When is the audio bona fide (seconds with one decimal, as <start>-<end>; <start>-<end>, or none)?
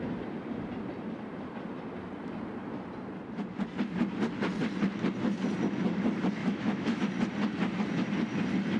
0.0-6.4; 7.0-8.8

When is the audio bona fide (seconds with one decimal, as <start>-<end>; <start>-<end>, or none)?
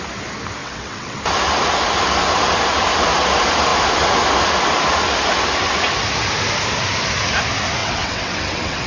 0.0-0.6; 1.2-7.8